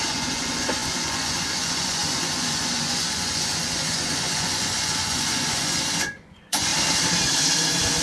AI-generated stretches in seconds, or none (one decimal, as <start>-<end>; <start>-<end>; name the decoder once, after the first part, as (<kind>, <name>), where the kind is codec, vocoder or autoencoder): 0.0-6.7 (vocoder, Vocos)